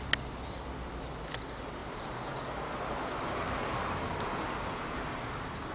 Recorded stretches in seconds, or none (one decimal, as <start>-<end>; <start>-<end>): 0.0-1.8; 4.4-5.7